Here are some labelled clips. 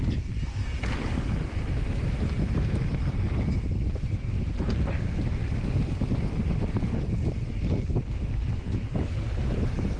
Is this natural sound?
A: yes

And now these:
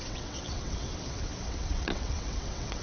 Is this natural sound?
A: no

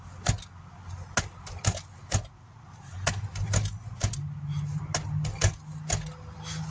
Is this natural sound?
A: yes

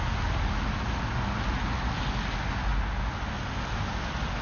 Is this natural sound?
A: yes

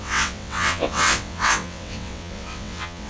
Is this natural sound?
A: no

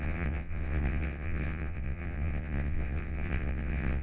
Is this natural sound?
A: no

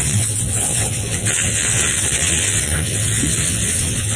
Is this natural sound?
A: no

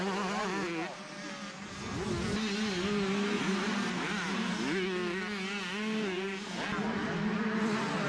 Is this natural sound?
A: yes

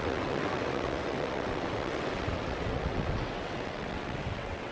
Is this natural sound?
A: no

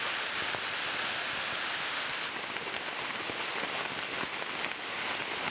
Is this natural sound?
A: yes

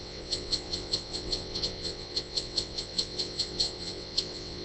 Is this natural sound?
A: no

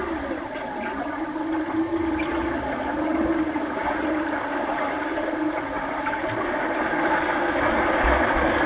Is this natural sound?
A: yes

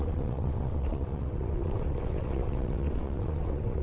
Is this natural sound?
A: no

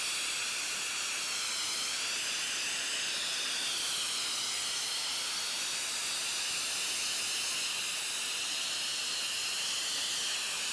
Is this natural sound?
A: yes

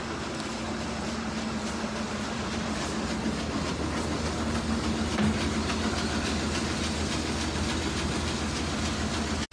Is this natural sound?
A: yes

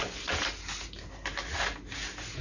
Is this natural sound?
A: yes